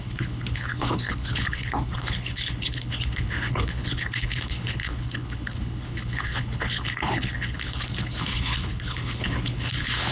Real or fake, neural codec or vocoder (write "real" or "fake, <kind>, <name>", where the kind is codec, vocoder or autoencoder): fake, codec, HILCodec